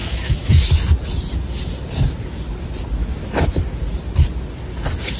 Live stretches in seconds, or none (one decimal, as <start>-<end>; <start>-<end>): 0.7-3.0; 3.6-5.2